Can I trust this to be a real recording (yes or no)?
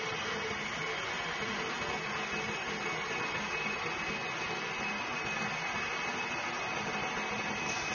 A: yes